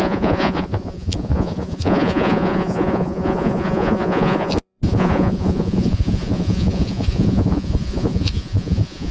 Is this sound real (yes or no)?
no